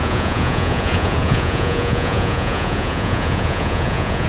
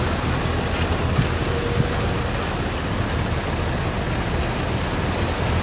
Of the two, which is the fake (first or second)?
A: first